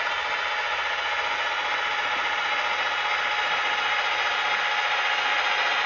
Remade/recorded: recorded